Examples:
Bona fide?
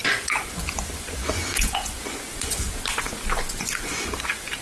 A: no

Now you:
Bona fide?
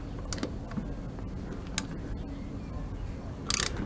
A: yes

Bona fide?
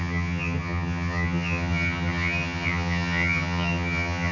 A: no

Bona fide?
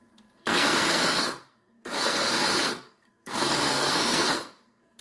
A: no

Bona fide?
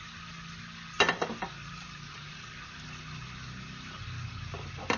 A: yes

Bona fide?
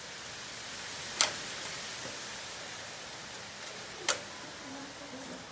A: yes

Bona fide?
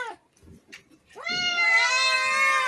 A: yes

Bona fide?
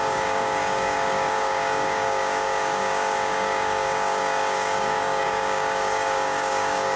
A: no